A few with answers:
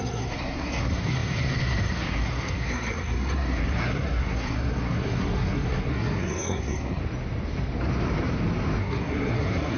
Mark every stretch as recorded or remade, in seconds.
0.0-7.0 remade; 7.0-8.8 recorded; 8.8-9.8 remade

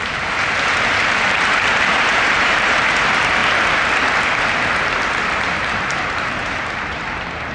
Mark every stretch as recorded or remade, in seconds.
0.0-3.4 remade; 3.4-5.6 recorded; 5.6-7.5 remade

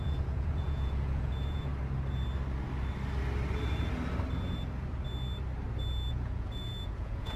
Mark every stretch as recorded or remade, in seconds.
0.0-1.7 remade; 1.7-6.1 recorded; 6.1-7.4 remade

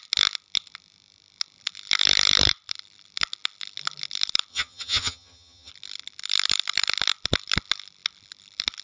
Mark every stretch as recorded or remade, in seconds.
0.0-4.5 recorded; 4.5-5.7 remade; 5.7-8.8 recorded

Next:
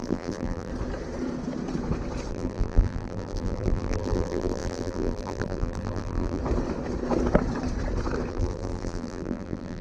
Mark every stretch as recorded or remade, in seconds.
0.0-0.7 remade; 0.7-2.3 recorded; 2.3-6.4 remade; 6.4-8.3 recorded; 8.3-9.8 remade